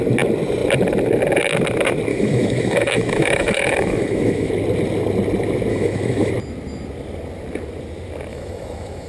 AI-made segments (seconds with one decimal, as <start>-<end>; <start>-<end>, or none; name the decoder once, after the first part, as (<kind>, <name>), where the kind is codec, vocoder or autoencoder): 2.1-4.5 (autoencoder, DAC-VAE); 5.7-6.3; 8.3-9.1